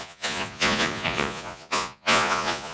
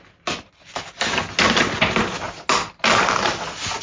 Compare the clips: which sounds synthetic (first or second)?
first